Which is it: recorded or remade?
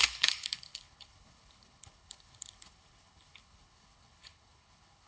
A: remade